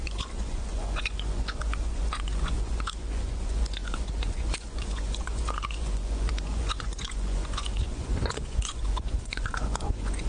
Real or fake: fake